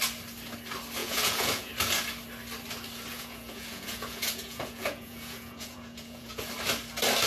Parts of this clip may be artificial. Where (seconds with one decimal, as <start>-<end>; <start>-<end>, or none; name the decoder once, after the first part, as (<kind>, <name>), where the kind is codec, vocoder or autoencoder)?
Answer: 1.0-1.7 (vocoder, Vocos); 3.1-6.5